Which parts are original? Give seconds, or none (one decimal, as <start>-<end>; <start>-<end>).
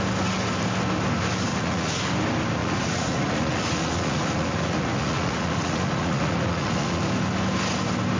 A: 0.0-1.5; 2.0-2.6; 7.0-8.2